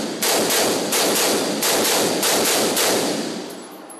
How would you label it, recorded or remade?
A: recorded